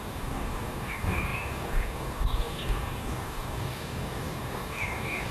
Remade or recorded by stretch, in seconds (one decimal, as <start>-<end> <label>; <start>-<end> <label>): 0.0-5.3 remade